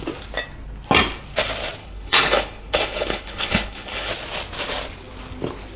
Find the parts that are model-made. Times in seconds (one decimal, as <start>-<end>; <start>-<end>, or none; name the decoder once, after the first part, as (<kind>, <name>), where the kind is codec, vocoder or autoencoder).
1.8-4.1 (codec, HILCodec)